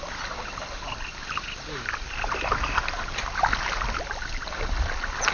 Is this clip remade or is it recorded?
recorded